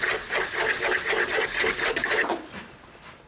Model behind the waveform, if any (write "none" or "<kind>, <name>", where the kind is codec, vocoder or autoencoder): none